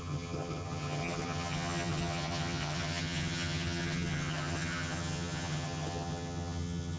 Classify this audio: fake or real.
fake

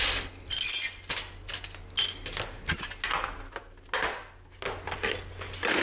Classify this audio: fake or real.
real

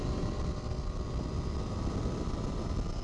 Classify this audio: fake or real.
real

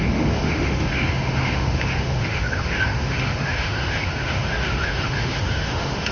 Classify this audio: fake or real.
fake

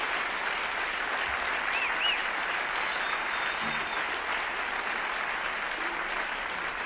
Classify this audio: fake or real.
real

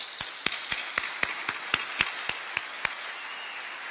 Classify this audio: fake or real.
real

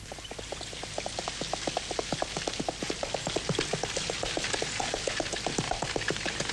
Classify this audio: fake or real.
real